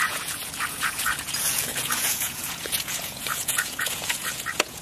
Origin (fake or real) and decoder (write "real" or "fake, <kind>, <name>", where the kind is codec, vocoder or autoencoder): fake, vocoder, Vocos